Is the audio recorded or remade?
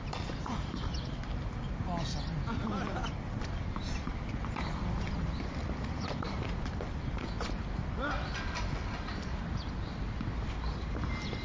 recorded